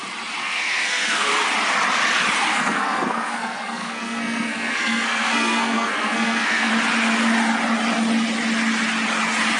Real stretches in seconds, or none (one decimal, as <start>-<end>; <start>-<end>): 0.0-0.4; 1.3-2.5; 6.7-9.6